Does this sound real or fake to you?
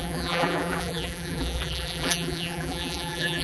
fake